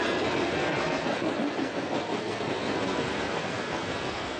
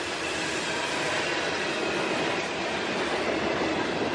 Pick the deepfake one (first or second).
first